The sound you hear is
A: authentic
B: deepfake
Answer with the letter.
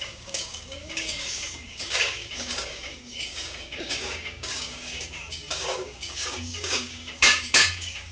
B